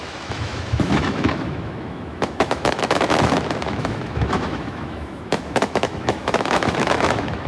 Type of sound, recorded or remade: remade